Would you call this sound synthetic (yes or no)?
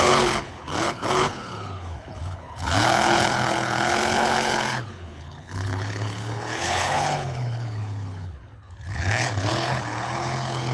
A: yes